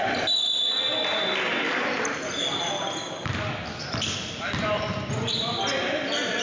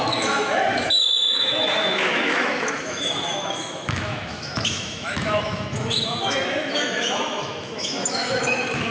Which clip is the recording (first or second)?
first